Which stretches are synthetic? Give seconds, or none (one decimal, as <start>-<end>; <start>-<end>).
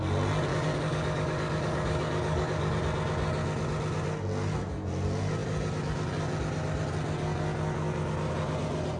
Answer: 0.5-2.8